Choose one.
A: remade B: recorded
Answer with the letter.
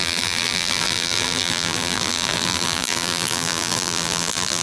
A